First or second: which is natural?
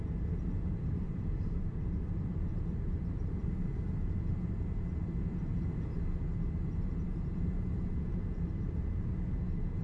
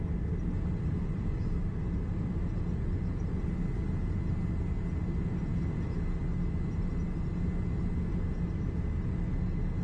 second